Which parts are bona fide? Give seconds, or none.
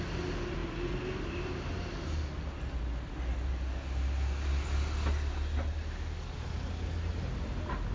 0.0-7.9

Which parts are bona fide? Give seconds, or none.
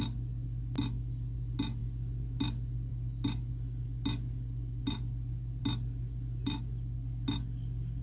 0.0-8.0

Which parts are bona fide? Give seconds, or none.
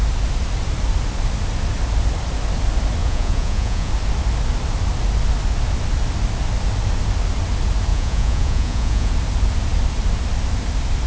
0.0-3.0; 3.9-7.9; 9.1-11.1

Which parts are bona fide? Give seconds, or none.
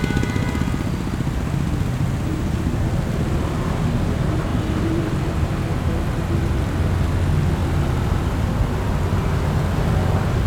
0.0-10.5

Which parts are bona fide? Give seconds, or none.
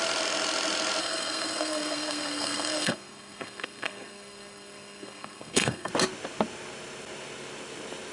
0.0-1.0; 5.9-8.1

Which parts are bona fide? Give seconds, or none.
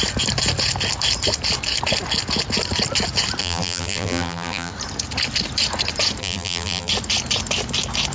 0.0-3.4; 4.7-6.2; 6.9-8.1